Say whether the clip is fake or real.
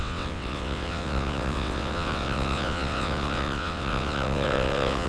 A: fake